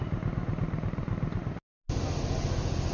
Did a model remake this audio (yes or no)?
no